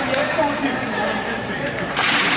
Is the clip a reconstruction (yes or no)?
yes